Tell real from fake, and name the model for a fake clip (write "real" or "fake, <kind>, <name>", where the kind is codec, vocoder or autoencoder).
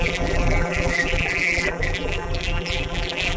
fake, vocoder, BigVGAN v2